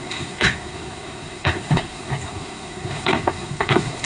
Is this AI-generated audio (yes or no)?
yes